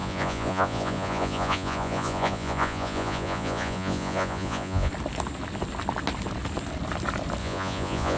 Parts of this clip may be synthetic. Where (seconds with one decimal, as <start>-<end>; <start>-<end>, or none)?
0.0-4.9; 7.4-8.2

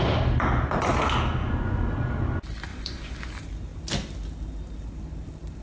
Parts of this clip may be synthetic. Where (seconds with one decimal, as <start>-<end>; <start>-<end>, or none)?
1.4-2.0; 2.7-3.3

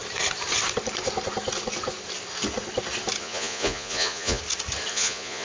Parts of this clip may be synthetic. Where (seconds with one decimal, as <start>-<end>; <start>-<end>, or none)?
3.2-4.4; 4.9-5.4

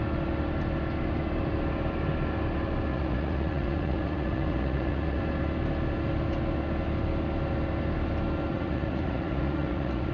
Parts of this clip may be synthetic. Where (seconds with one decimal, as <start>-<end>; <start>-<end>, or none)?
2.9-5.2; 8.5-10.1

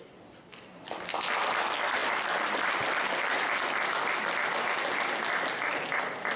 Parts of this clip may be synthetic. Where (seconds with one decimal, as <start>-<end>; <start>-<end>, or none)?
none

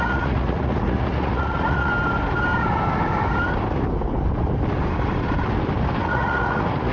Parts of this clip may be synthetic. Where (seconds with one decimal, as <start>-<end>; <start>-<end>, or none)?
0.0-1.9; 6.0-6.9